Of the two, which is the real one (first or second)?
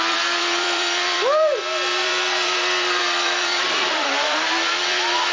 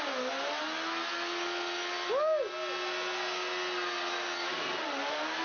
second